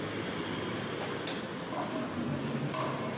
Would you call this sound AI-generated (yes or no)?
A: no